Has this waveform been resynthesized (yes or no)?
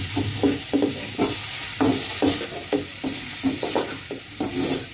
no